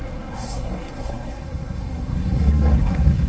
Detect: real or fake fake